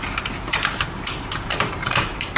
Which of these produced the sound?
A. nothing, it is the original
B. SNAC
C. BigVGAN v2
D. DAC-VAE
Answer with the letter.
C